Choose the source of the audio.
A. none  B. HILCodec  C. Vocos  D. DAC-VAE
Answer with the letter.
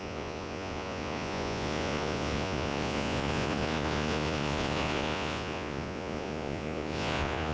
C